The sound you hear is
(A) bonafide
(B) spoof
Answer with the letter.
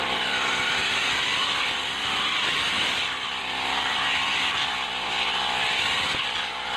B